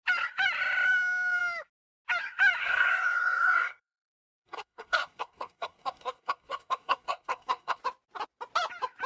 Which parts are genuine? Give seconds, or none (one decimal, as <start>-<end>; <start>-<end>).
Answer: 0.0-2.6; 7.8-9.1